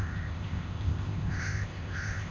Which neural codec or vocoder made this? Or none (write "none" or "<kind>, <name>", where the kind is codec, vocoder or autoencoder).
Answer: codec, ZipCodec